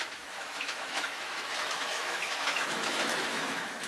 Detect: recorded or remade remade